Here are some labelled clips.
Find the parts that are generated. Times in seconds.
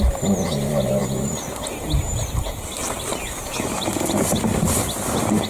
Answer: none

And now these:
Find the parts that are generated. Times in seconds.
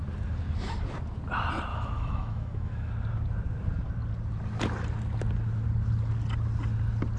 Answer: 1.7-2.9